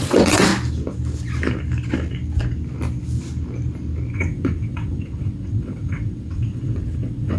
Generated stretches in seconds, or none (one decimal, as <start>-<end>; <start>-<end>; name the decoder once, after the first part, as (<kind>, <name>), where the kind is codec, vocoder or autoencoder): 0.0-0.5 (vocoder, WaveNeXt); 4.1-7.4

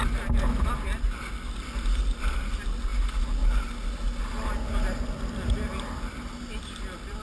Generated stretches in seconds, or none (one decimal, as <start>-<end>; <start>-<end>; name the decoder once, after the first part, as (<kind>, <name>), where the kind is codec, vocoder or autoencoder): none